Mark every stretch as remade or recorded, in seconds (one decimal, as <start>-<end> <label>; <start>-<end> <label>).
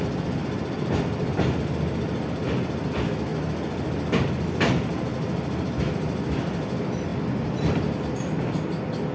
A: 0.0-9.1 recorded